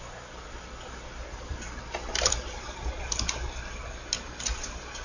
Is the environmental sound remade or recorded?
recorded